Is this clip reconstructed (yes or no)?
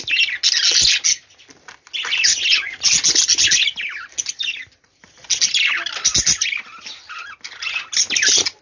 no